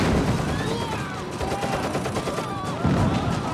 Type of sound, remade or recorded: recorded